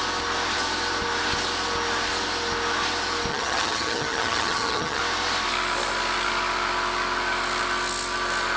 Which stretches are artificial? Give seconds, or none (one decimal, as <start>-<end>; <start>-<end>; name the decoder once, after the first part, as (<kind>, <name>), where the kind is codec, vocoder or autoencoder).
3.3-5.0 (vocoder, HiFi-GAN)